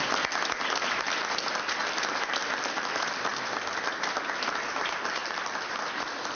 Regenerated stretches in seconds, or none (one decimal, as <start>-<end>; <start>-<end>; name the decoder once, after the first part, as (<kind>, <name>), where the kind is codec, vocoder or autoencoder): none